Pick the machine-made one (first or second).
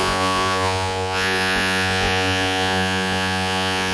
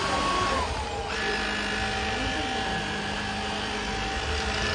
first